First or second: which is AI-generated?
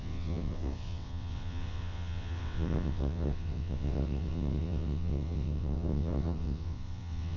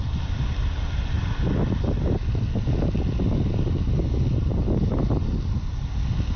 first